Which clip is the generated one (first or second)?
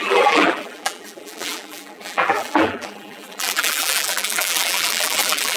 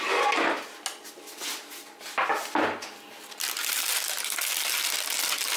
first